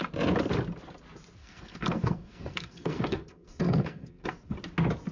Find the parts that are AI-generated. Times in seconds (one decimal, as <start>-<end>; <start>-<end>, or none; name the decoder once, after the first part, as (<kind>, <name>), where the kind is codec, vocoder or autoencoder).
1.4-4.5 (codec, SNAC)